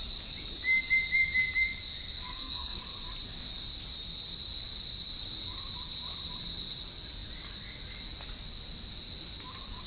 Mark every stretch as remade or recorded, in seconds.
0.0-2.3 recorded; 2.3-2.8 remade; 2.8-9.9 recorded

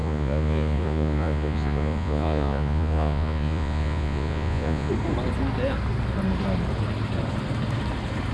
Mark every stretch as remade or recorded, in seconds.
0.0-4.9 remade; 4.9-8.3 recorded

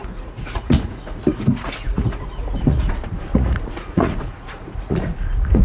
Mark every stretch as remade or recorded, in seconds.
0.0-2.9 remade; 2.9-3.3 recorded; 3.3-5.6 remade

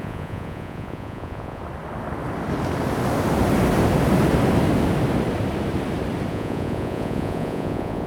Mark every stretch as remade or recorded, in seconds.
0.0-1.6 remade; 1.6-6.3 recorded; 6.3-8.1 remade

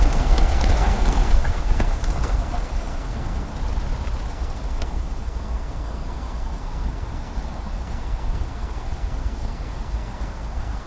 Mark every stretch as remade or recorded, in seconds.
0.0-3.5 remade; 3.5-4.3 recorded; 4.3-10.9 remade

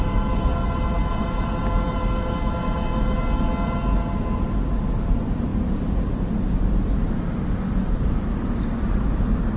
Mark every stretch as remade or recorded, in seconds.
0.0-9.6 recorded

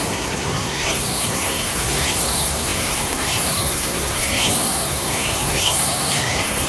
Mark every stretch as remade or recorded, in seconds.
0.0-6.7 remade

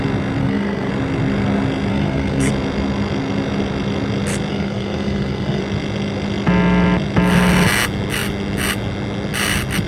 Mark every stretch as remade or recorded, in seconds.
0.0-0.4 recorded; 0.4-0.9 remade; 0.9-1.9 recorded; 1.9-2.5 remade; 2.5-4.5 recorded; 4.5-5.6 remade; 5.6-9.9 recorded